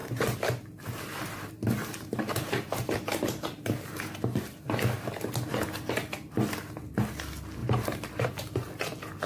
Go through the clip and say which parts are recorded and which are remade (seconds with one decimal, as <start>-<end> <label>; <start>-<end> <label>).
0.0-4.7 remade; 4.7-7.6 recorded; 7.6-8.4 remade; 8.4-9.3 recorded